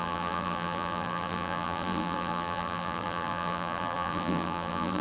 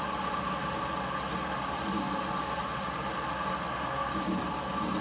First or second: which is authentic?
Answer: second